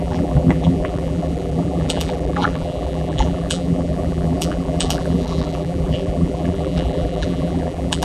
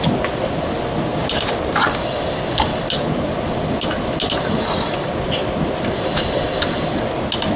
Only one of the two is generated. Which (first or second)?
first